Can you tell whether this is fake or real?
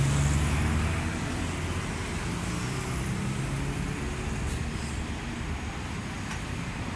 real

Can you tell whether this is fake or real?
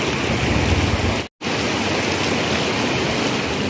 real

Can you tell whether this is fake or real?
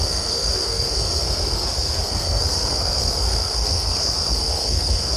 fake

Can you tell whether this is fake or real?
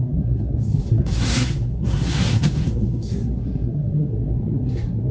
fake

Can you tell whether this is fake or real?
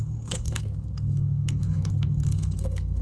fake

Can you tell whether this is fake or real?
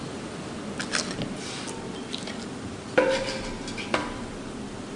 real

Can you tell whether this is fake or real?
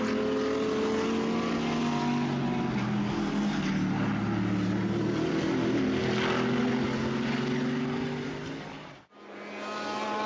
real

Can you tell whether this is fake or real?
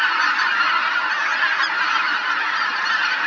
real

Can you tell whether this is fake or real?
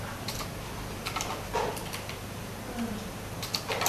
real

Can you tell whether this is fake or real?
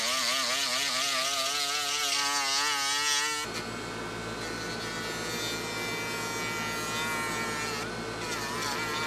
real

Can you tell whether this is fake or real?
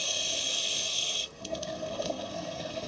fake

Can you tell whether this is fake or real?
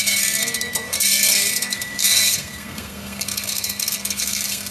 fake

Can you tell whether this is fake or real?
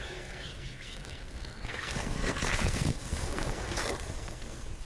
fake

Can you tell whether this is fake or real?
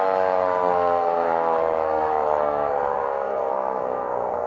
fake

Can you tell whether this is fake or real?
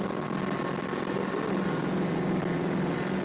real